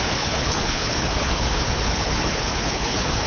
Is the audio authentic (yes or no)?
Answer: no